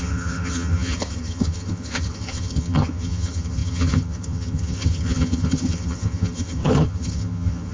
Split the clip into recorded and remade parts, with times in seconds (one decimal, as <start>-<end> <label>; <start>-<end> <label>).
0.0-7.7 remade